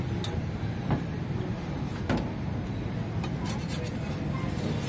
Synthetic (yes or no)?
no